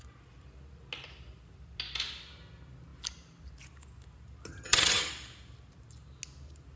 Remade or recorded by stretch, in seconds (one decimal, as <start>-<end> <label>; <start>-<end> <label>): 0.0-4.5 recorded; 4.5-5.1 remade; 5.1-6.8 recorded

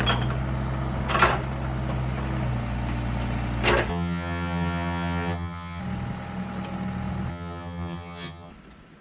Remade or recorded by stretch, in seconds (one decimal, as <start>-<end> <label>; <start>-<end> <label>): 0.0-3.9 recorded; 3.9-5.8 remade; 5.8-7.3 recorded; 7.3-8.5 remade; 8.5-9.0 recorded

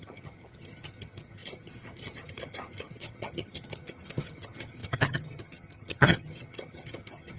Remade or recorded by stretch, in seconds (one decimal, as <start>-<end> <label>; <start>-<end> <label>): 0.0-7.4 remade

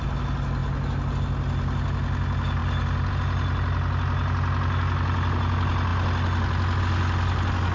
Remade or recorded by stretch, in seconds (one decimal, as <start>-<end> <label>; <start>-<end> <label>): 0.0-7.7 recorded

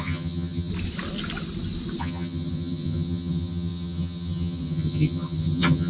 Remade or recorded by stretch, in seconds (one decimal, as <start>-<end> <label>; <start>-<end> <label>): 0.0-0.7 remade; 0.7-2.0 recorded; 2.0-5.9 remade

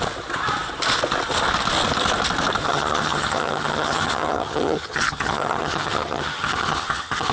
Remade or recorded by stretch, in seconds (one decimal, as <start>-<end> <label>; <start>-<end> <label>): 0.0-2.6 recorded; 2.6-7.3 remade

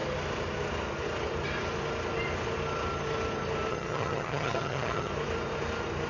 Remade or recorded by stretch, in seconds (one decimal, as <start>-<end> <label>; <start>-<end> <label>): 0.0-3.7 recorded; 3.7-5.1 remade; 5.1-6.1 recorded